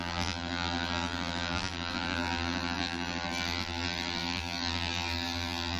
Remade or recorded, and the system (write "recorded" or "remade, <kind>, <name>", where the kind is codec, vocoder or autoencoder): remade, vocoder, BigVGAN v2